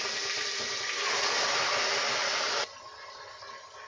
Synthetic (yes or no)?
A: no